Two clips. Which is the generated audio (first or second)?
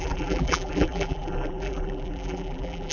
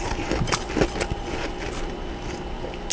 first